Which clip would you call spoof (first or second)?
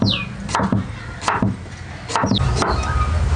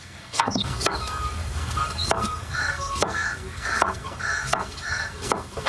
second